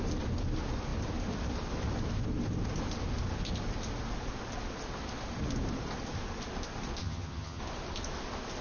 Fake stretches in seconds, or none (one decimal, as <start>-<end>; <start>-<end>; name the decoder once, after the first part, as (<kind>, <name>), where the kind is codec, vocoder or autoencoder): 7.0-7.6 (vocoder, HiFi-GAN)